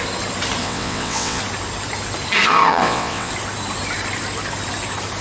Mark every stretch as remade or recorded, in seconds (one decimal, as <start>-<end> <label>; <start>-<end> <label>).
0.0-0.6 recorded; 0.6-1.4 remade; 1.4-2.7 recorded; 2.7-3.3 remade; 3.3-5.2 recorded